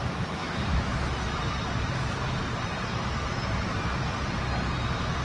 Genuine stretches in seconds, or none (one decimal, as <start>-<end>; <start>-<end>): 0.0-0.4; 1.4-5.2